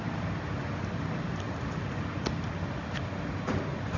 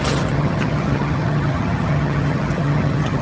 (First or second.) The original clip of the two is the first